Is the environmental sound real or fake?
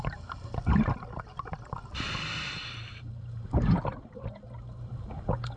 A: real